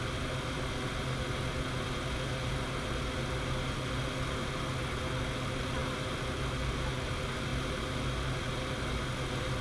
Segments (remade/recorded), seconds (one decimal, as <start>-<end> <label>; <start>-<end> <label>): 0.0-9.6 recorded